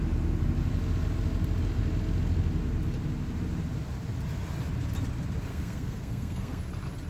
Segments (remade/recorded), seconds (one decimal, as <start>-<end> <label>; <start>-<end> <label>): 0.0-5.5 recorded; 5.5-6.6 remade; 6.6-7.1 recorded